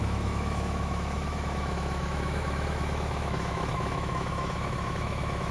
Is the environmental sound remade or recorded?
remade